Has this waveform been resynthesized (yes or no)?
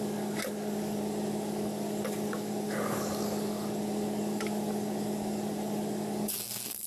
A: yes